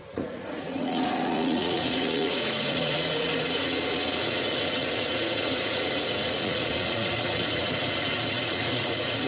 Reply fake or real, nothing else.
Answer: fake